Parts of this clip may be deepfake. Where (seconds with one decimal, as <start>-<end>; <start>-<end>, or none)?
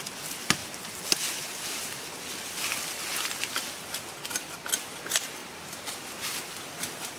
0.6-2.1; 5.4-6.0